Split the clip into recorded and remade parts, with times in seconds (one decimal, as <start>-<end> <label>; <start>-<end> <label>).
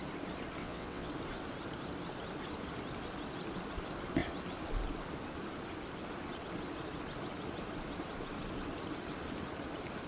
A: 0.0-0.6 recorded; 0.6-1.1 remade; 1.1-10.1 recorded